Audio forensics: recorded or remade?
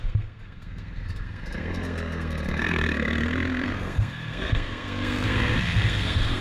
remade